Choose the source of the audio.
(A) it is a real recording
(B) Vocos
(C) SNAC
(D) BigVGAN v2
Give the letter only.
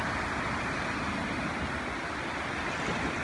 A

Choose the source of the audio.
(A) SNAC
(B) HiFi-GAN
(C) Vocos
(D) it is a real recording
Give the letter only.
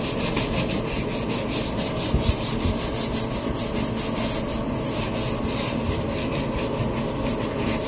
D